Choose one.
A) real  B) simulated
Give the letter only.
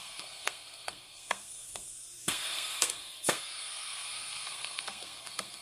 B